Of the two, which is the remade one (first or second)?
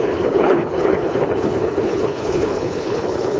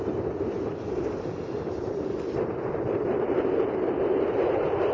first